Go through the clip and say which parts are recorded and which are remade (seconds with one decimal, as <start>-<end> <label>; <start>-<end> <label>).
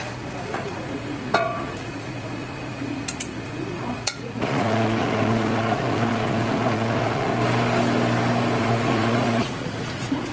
0.0-7.3 remade; 7.3-8.6 recorded; 8.6-10.3 remade